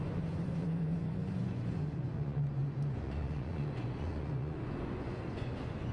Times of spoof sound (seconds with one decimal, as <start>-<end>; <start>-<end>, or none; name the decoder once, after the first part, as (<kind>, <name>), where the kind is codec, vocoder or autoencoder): 0.0-5.9 (vocoder, Vocos)